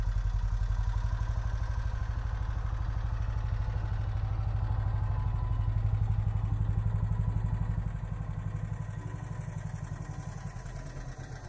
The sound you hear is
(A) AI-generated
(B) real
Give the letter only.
B